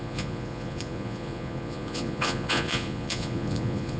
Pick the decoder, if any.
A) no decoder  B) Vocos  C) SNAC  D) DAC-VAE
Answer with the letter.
B